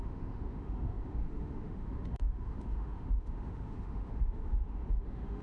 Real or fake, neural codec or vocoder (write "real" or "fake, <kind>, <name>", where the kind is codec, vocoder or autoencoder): fake, autoencoder, DAC-VAE